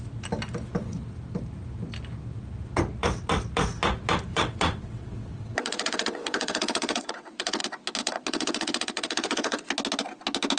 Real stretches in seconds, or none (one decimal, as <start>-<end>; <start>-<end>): 0.0-4.3; 7.6-8.0; 9.7-10.6